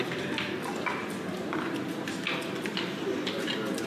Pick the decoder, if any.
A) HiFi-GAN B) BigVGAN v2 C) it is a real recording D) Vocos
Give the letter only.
C